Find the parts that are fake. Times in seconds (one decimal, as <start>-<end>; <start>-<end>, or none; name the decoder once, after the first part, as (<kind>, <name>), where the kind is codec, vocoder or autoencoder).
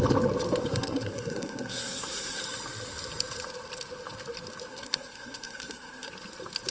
0.6-2.4 (codec, SNAC); 4.7-6.1